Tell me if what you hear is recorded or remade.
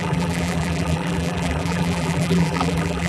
remade